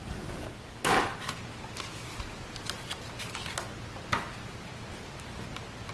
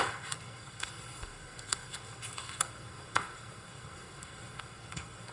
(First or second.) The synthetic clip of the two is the second